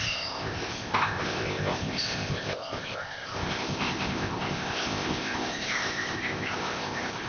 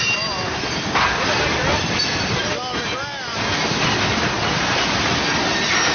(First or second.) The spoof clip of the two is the first